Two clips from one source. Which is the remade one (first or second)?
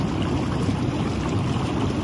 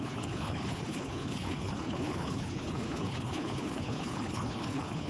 second